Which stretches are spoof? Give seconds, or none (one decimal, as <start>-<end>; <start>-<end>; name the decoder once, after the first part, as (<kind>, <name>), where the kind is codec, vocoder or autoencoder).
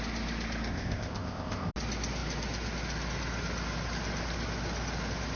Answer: 0.7-1.7 (codec, ZipCodec)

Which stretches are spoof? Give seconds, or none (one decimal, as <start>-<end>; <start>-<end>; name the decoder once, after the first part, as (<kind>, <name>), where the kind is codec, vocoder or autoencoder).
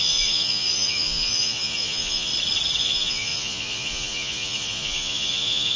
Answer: 0.0-2.3 (vocoder, Vocos); 2.8-5.8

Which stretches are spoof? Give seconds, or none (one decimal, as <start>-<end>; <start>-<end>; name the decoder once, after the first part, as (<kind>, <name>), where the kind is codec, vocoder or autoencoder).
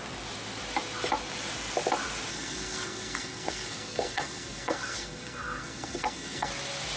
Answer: 2.3-6.5 (codec, SNAC)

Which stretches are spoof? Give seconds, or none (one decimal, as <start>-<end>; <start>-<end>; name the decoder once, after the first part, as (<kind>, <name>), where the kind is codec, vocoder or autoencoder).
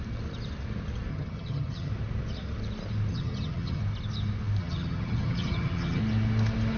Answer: 1.1-1.9 (vocoder, HiFi-GAN); 3.1-3.8; 4.6-6.0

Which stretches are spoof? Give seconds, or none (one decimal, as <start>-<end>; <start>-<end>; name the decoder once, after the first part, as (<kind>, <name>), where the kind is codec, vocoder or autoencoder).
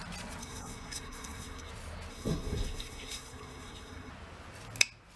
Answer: 0.4-1.7 (codec, SNAC); 2.1-4.1